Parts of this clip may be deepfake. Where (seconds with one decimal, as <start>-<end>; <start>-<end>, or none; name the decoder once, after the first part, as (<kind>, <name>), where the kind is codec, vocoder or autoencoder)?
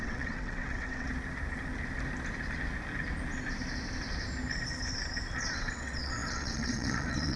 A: 0.0-1.1 (vocoder, WaveNeXt); 5.4-7.4